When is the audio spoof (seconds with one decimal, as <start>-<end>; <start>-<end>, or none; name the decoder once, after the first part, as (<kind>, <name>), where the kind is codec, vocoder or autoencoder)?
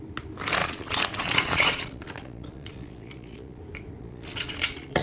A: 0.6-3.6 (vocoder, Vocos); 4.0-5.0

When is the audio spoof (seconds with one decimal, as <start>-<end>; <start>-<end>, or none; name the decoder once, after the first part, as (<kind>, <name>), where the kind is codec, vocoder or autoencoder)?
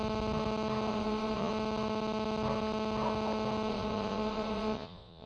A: 0.9-1.5 (vocoder, Vocos); 3.7-5.3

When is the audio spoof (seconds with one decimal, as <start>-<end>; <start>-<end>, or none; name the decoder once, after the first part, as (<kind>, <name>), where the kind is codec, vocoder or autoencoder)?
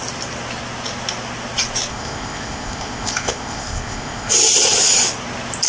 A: 1.9-4.3 (codec, ZipCodec)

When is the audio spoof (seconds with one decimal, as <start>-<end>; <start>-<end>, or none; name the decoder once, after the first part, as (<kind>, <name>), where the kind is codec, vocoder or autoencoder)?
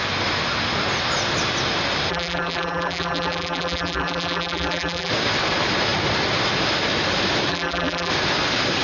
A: 2.1-5.1 (vocoder, BigVGAN v2); 7.5-8.1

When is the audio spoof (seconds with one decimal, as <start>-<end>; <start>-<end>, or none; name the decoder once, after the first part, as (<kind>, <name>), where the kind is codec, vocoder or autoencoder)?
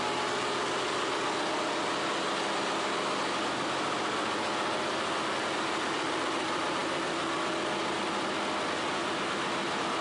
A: none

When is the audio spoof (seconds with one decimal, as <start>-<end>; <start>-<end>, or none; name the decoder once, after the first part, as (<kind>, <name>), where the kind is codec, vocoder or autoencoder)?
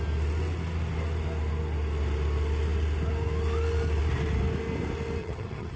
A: 5.2-5.8 (vocoder, HiFi-GAN)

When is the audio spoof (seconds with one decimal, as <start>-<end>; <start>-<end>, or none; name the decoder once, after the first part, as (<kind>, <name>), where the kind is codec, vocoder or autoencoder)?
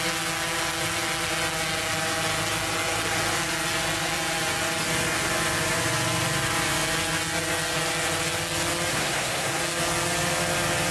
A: 8.9-9.6 (codec, SNAC)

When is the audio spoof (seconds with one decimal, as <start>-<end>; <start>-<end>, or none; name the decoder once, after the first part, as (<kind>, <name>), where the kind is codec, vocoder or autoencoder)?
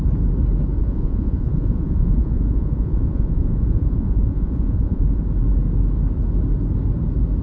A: 0.8-5.2 (vocoder, Vocos)